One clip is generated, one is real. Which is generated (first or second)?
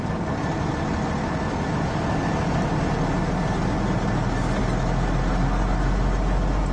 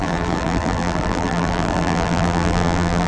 second